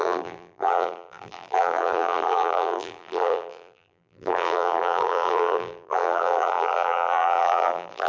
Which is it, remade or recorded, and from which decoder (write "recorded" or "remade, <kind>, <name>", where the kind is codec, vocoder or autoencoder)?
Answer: remade, vocoder, BigVGAN v2